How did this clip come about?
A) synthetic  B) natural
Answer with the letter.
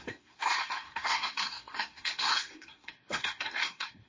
A